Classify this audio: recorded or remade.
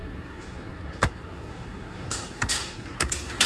remade